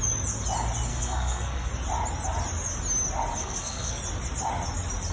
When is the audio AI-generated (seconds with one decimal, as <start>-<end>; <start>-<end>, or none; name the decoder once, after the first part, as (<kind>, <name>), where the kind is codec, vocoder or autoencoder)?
0.9-1.7 (codec, SNAC); 3.4-4.0